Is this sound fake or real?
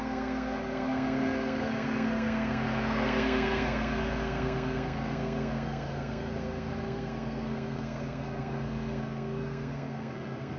fake